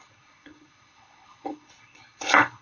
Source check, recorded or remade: remade